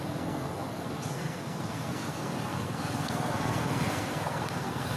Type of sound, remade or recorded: remade